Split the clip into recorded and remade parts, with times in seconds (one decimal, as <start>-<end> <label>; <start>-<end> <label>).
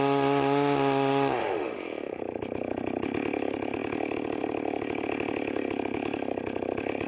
0.0-1.4 recorded; 1.4-2.2 remade; 2.2-7.1 recorded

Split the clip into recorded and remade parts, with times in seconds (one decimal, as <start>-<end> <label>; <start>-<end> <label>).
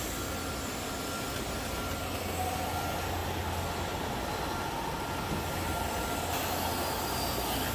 0.0-7.7 recorded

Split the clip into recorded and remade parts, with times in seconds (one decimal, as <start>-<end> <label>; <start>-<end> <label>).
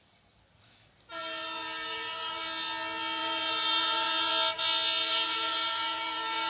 0.0-1.2 recorded; 1.2-2.4 remade; 2.4-3.2 recorded; 3.2-4.3 remade; 4.3-5.0 recorded; 5.0-6.5 remade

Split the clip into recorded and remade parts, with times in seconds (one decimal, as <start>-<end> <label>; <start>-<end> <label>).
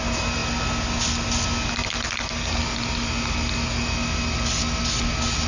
0.0-5.5 recorded